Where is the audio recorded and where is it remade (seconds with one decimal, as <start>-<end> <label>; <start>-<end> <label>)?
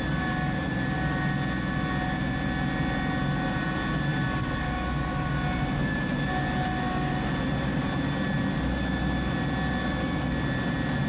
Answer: 0.0-11.1 recorded